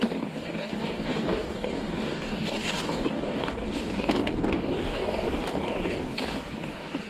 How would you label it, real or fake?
fake